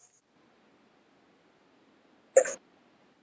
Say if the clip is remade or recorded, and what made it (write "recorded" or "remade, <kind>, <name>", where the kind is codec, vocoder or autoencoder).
recorded